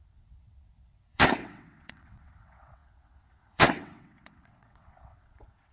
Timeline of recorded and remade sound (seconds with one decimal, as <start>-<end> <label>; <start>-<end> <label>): 0.0-5.7 remade